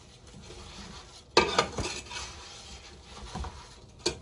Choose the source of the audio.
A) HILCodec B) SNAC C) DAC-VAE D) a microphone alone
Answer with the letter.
D